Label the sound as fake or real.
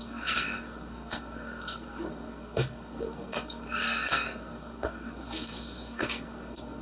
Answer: fake